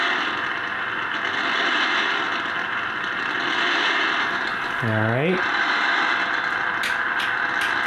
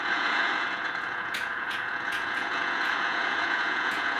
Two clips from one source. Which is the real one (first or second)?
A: first